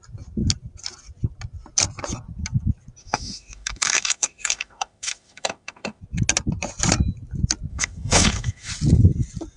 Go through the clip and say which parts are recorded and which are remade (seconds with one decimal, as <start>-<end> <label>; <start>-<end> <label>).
0.0-3.0 recorded; 3.0-6.0 remade; 6.0-7.7 recorded; 7.7-8.7 remade; 8.7-9.6 recorded